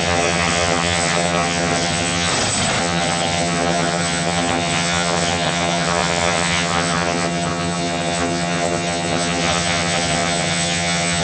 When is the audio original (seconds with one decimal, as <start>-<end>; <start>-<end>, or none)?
2.3-2.8

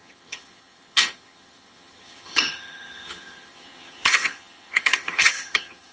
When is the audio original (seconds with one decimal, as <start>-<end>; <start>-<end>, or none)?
none

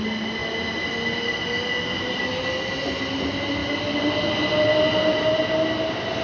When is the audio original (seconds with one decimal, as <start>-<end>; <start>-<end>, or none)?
0.0-6.2

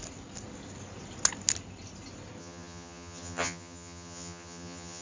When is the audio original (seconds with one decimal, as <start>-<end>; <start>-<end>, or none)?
0.0-2.4